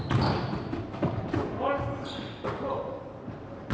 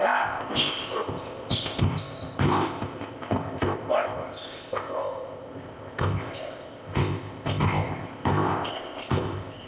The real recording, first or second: first